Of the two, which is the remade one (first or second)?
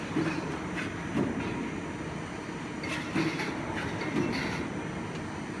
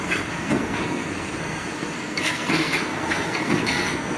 second